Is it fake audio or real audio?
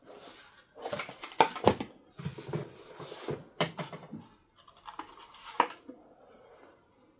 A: real